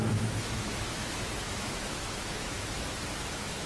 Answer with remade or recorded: remade